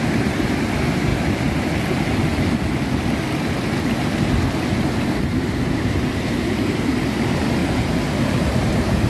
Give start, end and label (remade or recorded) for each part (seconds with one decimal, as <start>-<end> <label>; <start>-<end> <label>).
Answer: 0.0-1.1 remade; 1.1-5.2 recorded; 5.2-7.6 remade; 7.6-8.3 recorded; 8.3-9.1 remade